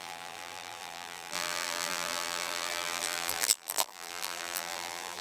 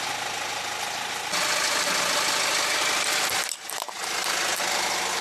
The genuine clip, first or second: second